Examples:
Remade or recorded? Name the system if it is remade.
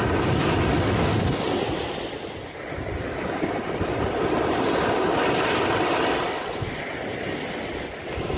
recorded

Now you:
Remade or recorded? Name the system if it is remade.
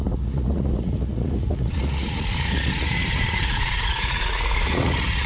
remade, vocoder, Vocos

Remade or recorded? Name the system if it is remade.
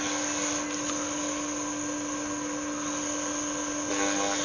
recorded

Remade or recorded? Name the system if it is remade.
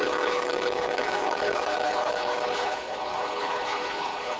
remade, codec, HILCodec